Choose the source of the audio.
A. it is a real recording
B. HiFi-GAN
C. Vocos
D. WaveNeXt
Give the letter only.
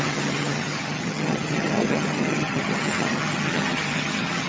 B